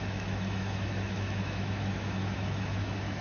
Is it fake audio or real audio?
fake